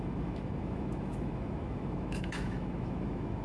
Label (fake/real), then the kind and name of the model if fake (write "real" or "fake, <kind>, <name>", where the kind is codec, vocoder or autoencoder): fake, autoencoder, DAC-VAE